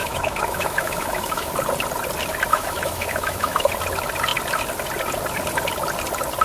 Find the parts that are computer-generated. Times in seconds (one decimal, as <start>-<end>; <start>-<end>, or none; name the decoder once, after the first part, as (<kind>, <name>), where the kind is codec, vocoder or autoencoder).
0.0-1.5 (autoencoder, DAC-VAE); 2.5-3.7

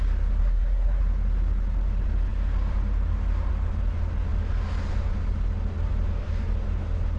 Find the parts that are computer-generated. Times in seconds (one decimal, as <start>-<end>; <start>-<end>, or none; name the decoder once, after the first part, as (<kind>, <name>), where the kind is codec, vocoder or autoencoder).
0.4-1.0 (codec, SNAC)

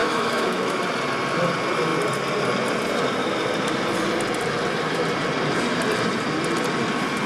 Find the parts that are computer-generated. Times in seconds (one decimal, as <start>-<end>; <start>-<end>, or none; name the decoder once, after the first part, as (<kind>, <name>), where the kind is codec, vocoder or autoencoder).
0.0-0.8 (autoencoder, DAC-VAE)

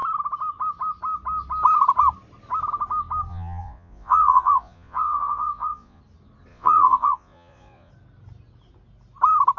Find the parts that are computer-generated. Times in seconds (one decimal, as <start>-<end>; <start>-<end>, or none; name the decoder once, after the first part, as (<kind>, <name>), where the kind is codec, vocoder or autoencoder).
3.3-6.0 (vocoder, Vocos); 6.5-7.9

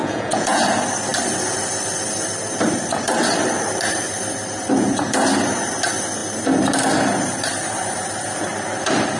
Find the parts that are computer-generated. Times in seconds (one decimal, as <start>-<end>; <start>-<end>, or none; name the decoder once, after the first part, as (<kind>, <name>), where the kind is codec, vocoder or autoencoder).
0.0-0.6 (vocoder, Vocos)

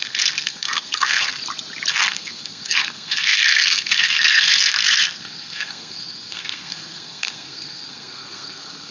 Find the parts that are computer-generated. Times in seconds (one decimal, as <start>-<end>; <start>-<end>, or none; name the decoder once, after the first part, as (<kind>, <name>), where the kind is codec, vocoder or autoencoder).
0.0-1.4 (codec, SNAC); 1.9-8.9

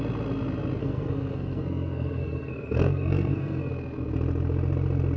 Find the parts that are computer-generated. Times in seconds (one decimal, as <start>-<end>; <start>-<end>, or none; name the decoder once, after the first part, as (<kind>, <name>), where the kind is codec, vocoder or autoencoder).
0.8-3.7 (codec, SNAC)

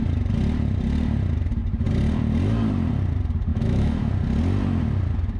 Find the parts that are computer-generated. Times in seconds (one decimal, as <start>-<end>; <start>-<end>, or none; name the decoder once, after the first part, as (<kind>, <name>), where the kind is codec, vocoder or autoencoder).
3.5-4.1 (autoencoder, DAC-VAE)